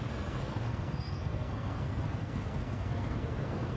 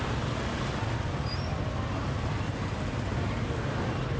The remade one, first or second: first